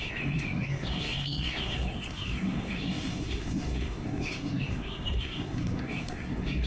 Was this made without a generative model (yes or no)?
no